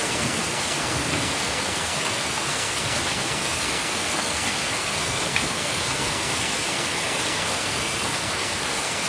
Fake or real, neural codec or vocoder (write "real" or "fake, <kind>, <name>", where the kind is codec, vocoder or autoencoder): fake, codec, SNAC